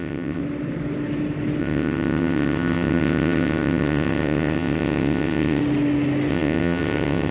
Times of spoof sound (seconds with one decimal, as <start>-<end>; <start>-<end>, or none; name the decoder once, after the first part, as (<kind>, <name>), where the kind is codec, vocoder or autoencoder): 0.0-0.4 (vocoder, WaveNeXt); 1.6-5.6; 6.3-7.3

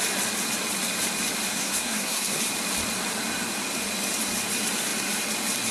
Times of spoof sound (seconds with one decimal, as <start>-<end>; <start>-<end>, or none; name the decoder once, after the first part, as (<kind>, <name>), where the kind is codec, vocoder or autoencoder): 1.5-2.4 (codec, SNAC)

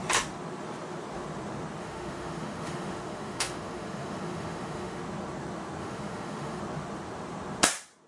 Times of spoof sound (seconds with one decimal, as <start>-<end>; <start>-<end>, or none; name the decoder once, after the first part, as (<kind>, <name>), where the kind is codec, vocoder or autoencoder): 1.8-5.0 (autoencoder, DAC-VAE); 5.8-6.6

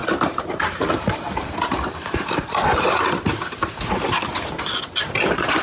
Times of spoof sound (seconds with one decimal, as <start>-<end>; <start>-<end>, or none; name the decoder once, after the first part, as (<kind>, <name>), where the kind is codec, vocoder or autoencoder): none